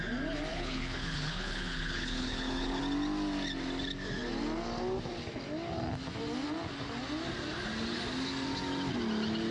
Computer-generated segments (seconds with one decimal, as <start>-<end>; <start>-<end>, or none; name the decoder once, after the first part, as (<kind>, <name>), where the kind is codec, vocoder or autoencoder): 0.5-2.8 (codec, HILCodec)